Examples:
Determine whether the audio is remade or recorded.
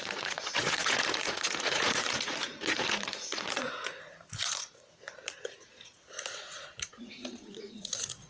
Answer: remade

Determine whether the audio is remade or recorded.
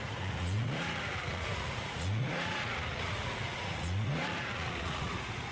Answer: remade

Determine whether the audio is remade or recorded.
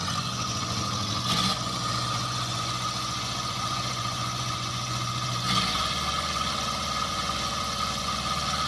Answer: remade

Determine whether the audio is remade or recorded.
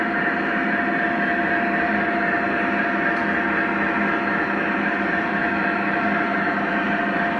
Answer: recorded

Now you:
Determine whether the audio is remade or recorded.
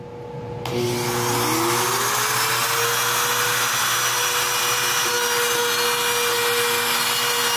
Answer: recorded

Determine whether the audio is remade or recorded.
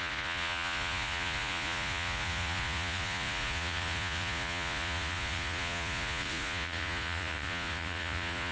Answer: remade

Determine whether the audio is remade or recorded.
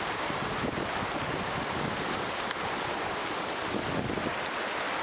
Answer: recorded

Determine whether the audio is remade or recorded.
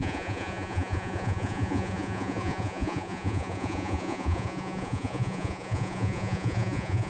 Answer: remade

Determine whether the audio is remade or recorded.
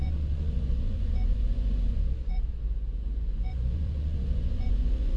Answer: remade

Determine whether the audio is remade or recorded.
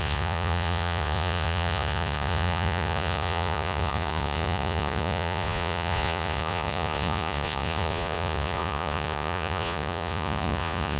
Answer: remade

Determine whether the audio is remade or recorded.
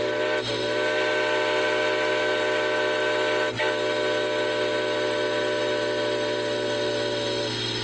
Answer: recorded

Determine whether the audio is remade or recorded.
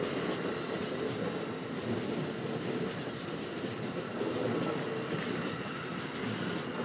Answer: recorded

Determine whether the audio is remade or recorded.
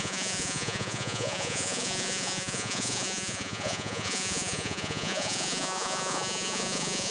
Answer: remade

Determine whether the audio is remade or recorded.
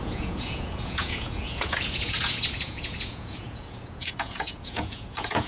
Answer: remade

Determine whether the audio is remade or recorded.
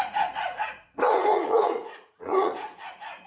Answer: remade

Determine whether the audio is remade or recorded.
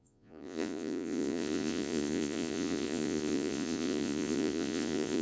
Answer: remade